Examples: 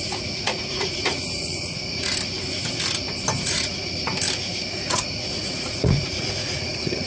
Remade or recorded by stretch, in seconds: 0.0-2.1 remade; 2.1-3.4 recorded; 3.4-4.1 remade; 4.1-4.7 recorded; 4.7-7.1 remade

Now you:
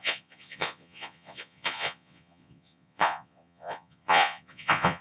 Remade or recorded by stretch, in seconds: 0.0-5.0 remade